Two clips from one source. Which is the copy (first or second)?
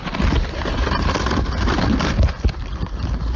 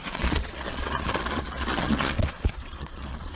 second